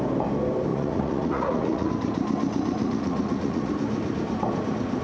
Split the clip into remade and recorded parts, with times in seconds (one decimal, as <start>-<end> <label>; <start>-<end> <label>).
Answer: 0.0-0.7 recorded; 0.7-1.9 remade; 1.9-2.8 recorded; 2.8-3.7 remade; 3.7-5.0 recorded